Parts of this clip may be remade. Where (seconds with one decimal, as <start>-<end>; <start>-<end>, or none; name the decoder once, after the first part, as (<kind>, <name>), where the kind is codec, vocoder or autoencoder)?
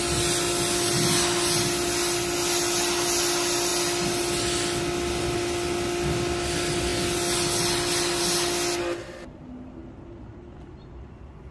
none